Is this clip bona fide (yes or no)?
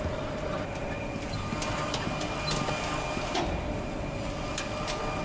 yes